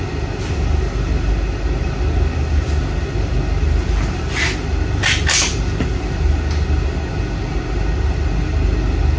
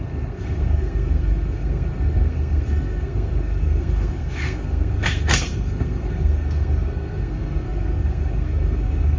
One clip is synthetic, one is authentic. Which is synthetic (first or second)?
second